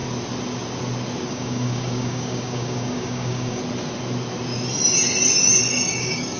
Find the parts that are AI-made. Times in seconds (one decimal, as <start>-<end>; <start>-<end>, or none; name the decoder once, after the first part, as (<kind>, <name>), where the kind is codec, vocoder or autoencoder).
1.3-3.6 (codec, DAC); 5.7-6.4